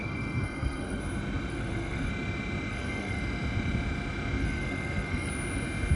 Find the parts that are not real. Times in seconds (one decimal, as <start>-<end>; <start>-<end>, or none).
0.0-1.0; 1.5-2.1; 2.7-3.2; 4.4-5.3